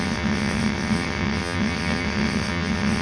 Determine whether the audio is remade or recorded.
remade